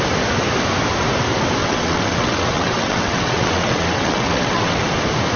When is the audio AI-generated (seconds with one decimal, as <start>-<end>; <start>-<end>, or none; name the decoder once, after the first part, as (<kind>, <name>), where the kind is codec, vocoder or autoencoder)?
1.6-4.8 (vocoder, WaveNeXt)